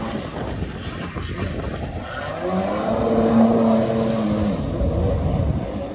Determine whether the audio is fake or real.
real